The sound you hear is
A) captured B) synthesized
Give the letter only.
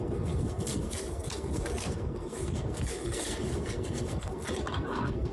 B